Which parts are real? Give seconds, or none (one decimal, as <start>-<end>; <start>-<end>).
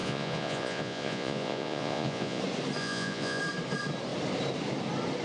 2.4-2.8; 3.4-5.2